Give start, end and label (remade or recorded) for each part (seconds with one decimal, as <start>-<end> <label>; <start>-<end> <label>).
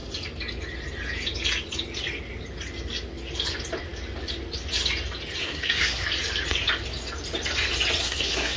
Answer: 0.0-5.4 recorded; 5.4-6.1 remade; 6.1-8.0 recorded; 8.0-8.6 remade